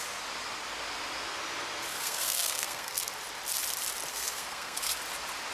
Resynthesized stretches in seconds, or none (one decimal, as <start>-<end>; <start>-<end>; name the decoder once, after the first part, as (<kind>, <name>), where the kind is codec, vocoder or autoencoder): 1.9-3.0 (codec, SNAC); 4.1-5.0